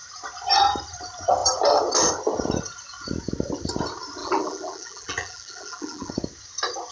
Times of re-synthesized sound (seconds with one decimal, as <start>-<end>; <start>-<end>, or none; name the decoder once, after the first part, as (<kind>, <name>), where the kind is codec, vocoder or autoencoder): 4.2-6.1 (vocoder, BigVGAN v2)